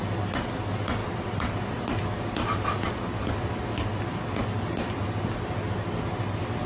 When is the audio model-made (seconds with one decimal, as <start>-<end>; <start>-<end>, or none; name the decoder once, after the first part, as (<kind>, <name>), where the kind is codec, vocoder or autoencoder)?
none